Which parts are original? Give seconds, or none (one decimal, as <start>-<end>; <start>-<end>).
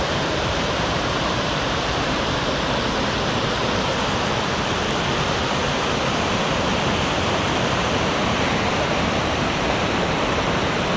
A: 5.6-6.7